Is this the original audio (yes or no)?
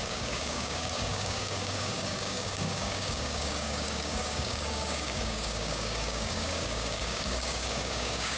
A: no